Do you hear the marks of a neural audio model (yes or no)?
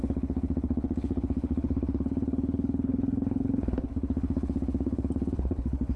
yes